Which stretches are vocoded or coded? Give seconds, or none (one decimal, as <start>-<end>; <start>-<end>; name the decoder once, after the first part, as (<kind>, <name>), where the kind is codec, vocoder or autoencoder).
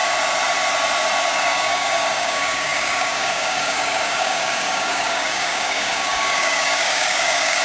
1.3-7.6 (codec, DAC)